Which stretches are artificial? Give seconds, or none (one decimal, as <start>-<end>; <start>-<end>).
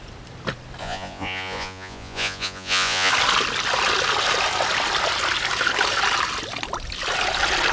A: 0.8-3.1